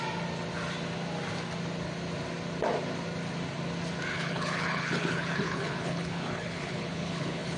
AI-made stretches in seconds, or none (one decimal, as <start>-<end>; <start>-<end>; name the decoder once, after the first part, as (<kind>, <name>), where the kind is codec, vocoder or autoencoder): 4.1-7.6 (codec, HILCodec)